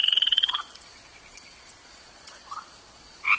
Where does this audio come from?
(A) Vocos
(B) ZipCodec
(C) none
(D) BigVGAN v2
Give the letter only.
A